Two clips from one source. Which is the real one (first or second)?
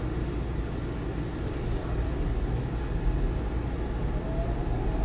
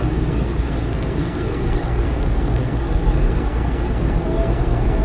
first